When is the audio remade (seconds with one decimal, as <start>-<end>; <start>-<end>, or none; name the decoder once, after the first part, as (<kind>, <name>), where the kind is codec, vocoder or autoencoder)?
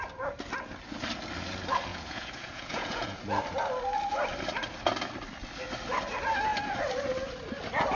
1.9-3.2 (vocoder, Vocos)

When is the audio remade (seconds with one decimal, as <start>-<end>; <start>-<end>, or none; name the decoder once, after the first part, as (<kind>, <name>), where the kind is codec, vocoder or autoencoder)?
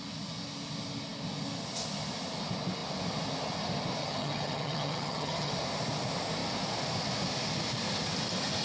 4.0-5.5 (vocoder, HiFi-GAN)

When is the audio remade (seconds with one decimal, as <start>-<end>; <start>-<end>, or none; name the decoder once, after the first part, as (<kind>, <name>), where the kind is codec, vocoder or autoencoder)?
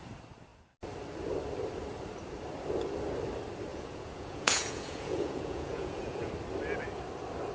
3.7-6.3 (vocoder, Vocos)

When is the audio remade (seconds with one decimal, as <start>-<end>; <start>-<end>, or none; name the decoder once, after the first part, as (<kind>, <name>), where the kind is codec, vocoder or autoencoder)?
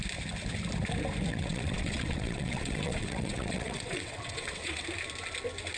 1.3-4.8 (vocoder, WaveNeXt)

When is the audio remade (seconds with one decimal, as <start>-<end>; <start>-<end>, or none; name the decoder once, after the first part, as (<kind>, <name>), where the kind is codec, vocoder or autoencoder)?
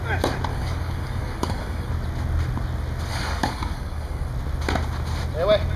0.5-1.9 (codec, DAC); 3.1-4.3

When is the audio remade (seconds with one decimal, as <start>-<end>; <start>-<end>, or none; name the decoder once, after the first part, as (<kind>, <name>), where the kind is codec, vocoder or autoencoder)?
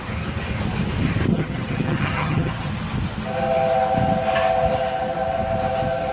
1.3-2.7 (vocoder, HiFi-GAN)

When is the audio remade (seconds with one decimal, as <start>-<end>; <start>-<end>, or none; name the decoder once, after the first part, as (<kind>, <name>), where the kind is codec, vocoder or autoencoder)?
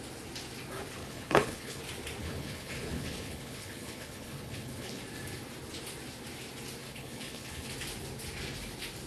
1.0-1.8 (codec, HILCodec); 2.2-5.0; 6.8-7.7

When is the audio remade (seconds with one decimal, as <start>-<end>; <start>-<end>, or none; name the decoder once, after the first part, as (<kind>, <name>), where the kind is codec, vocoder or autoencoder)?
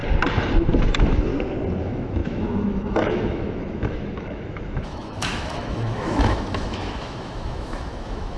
0.9-1.3 (autoencoder, DAC-VAE); 1.8-8.4